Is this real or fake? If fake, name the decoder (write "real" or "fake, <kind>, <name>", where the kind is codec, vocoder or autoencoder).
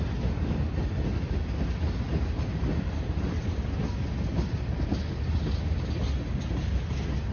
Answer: real